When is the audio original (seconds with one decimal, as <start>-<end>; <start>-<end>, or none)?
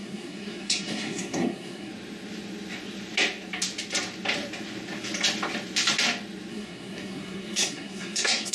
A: 1.9-6.5